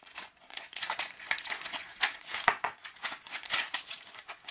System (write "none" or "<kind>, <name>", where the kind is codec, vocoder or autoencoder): vocoder, Vocos